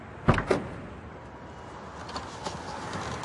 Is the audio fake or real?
real